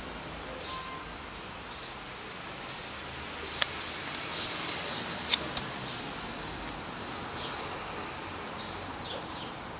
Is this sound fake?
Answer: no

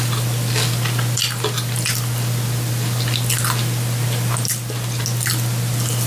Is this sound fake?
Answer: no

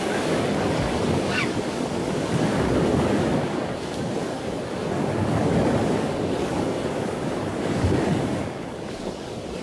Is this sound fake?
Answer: yes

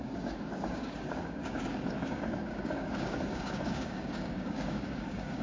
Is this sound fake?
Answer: yes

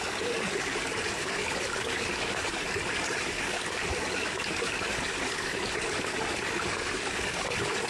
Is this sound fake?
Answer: yes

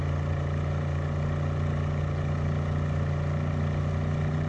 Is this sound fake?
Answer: no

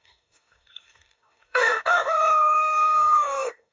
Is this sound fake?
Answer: yes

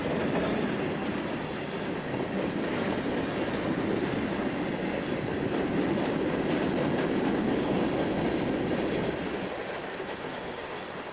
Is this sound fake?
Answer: no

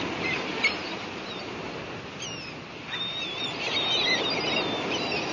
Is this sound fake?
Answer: no